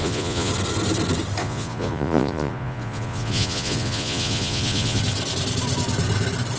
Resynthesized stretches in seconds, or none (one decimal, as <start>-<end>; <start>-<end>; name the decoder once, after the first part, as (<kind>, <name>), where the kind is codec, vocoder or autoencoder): 0.0-0.5 (vocoder, Vocos); 1.4-5.0